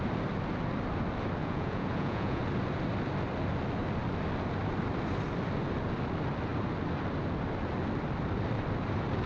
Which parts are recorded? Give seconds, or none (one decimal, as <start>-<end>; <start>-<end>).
0.0-1.4; 2.4-9.3